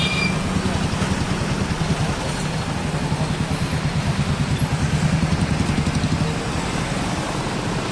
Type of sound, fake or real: real